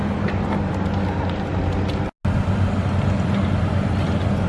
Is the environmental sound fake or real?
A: real